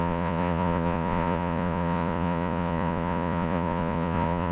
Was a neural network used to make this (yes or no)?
yes